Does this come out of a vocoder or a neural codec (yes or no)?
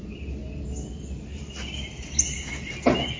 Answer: no